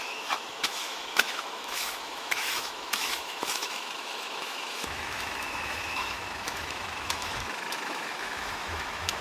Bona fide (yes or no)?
no